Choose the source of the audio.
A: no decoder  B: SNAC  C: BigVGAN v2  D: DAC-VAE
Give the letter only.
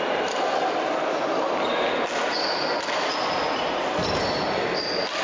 A